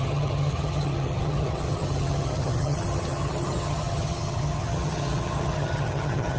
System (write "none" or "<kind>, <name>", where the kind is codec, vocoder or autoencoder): vocoder, HiFi-GAN